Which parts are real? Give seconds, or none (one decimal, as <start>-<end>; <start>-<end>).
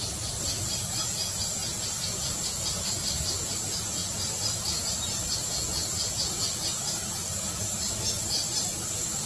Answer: 0.0-9.3